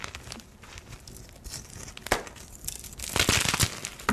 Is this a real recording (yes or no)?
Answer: yes